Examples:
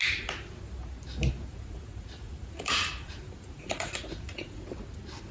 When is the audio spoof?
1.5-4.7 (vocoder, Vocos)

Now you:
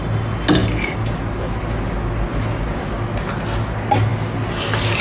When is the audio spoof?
none

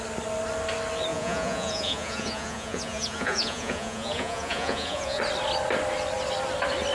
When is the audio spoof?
1.1-5.2 (vocoder, Vocos)

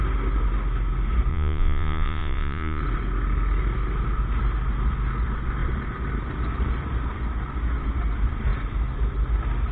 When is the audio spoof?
1.3-2.8 (vocoder, Vocos)

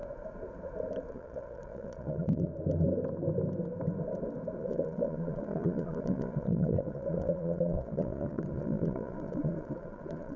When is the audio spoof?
1.1-2.5 (vocoder, Vocos); 4.6-10.4